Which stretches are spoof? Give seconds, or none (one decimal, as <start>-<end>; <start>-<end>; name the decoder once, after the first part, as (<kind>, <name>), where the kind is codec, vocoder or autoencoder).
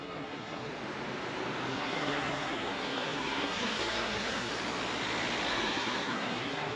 0.0-0.7 (codec, SNAC); 1.7-4.5; 5.5-6.8